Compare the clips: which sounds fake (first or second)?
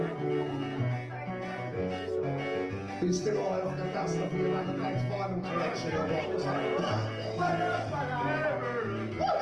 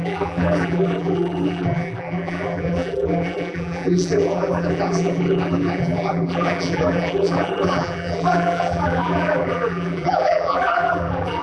second